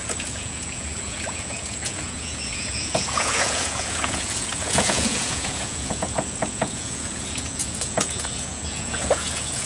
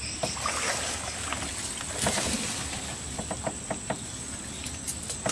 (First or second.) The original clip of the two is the second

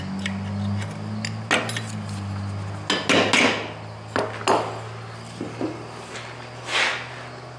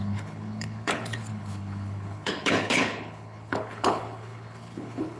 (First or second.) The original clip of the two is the first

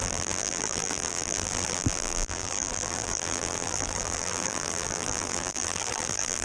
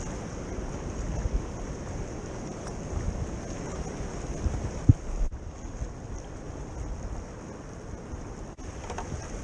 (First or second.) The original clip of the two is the second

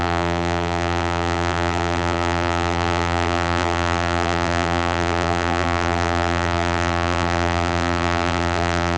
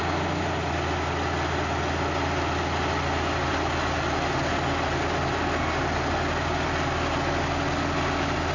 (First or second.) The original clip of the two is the second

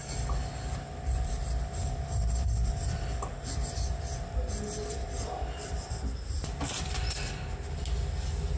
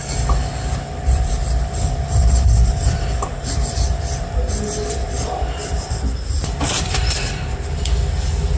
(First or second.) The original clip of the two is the first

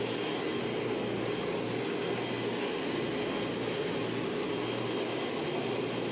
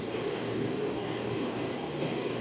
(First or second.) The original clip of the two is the first